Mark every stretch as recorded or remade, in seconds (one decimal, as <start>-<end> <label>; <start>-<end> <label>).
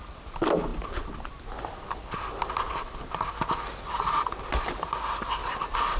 0.0-5.4 recorded; 5.4-6.0 remade